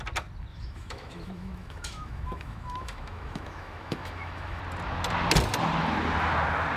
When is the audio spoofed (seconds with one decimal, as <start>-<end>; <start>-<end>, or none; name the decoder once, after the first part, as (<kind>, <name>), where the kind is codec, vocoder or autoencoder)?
0.5-4.6 (autoencoder, DAC-VAE)